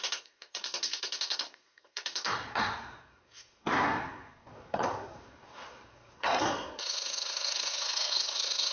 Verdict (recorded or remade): remade